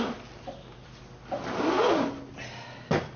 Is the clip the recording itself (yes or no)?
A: yes